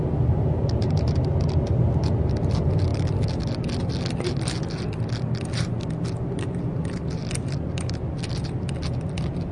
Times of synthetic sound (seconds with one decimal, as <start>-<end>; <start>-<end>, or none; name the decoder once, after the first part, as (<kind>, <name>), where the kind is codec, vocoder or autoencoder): none